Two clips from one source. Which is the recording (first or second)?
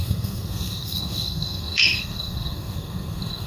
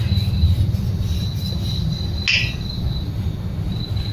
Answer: second